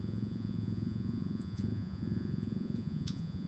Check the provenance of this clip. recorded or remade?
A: remade